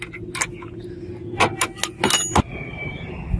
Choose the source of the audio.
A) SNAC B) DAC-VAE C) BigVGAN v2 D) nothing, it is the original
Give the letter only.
D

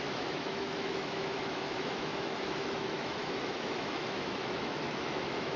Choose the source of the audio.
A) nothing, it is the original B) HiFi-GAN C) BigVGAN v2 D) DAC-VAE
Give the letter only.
D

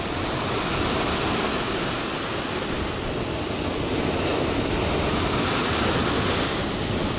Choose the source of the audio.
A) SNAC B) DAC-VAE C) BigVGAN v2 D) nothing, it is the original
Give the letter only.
D